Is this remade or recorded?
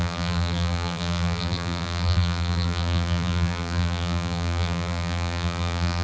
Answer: remade